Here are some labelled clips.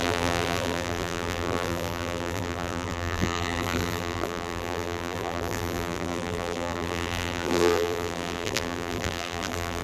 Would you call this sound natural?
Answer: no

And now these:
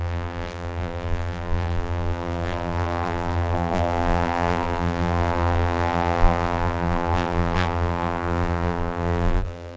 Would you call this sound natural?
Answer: no